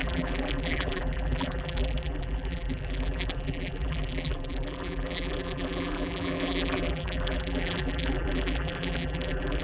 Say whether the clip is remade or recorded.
remade